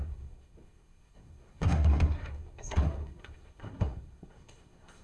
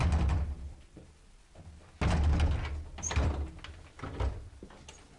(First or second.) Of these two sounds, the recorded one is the second